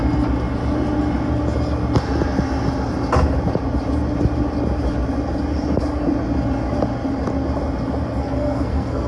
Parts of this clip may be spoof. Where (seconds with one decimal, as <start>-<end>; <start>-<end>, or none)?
8.2-9.1